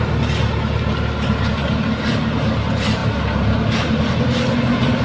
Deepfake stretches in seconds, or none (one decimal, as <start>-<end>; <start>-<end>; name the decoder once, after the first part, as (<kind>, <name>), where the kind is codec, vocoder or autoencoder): none